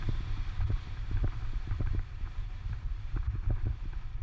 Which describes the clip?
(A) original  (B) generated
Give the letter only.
B